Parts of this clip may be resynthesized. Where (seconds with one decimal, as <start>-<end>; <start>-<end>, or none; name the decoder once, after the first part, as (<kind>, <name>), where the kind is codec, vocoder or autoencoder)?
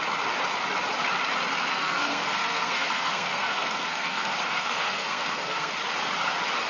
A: 1.7-5.7 (codec, SNAC)